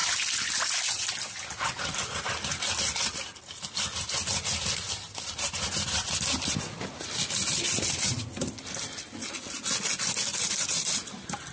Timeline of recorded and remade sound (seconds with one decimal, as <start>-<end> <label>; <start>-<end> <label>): 0.0-11.5 recorded